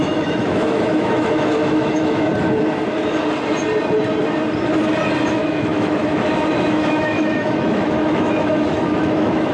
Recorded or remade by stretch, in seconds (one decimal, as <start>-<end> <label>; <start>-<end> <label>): 0.0-2.3 remade; 2.3-5.3 recorded; 5.3-9.5 remade